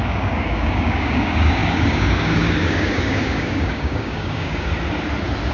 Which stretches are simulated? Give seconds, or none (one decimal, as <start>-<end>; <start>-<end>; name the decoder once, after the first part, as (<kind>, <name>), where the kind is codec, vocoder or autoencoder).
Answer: 0.0-4.7 (codec, DAC)